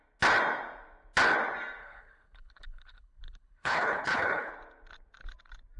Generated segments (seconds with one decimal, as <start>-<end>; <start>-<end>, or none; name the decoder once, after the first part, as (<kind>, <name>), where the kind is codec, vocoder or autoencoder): 1.8-4.5 (codec, HILCodec)